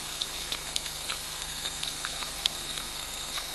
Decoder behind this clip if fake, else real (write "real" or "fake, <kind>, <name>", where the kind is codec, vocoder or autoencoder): fake, codec, SNAC